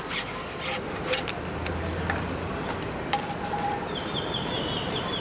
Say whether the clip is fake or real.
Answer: real